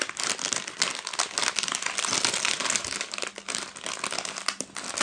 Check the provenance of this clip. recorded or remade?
recorded